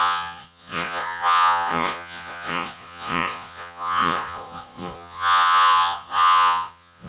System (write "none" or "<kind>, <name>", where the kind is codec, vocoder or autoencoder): vocoder, Vocos